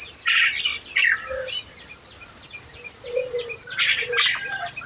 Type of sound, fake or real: real